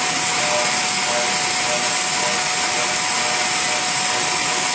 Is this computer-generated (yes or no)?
no